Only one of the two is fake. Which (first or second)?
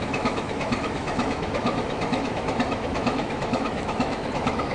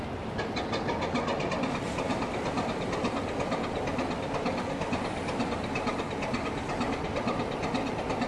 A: first